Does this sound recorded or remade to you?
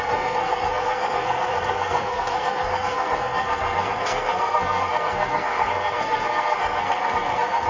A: remade